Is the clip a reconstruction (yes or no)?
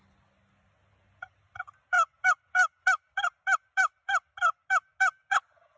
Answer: no